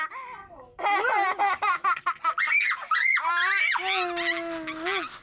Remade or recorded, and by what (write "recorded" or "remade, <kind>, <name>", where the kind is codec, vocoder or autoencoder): recorded